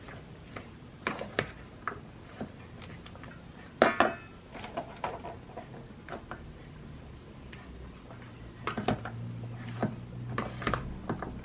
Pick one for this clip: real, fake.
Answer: real